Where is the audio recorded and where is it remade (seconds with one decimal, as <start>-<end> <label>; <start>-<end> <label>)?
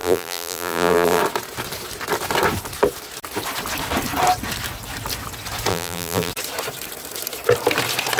0.0-1.2 remade; 1.2-5.7 recorded; 5.7-6.3 remade; 6.3-8.2 recorded